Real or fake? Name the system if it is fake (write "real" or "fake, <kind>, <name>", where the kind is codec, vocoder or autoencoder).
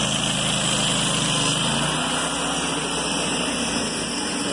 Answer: real